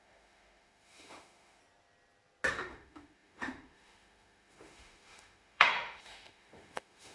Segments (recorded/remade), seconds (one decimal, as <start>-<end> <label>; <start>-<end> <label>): 0.0-1.6 remade; 1.6-2.5 recorded; 2.5-7.1 remade